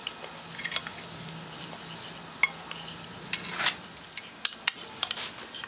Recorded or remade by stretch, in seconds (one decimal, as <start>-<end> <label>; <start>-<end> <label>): 0.0-5.7 recorded